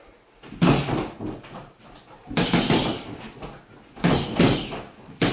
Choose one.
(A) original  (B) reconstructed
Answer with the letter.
A